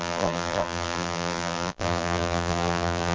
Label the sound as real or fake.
fake